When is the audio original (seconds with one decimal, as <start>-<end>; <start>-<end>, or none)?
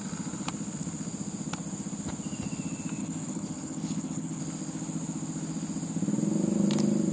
0.0-3.0; 4.4-7.1